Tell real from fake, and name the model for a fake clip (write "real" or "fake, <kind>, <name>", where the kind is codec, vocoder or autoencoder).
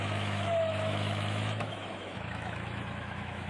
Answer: fake, autoencoder, DAC-VAE